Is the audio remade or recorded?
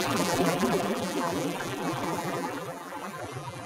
remade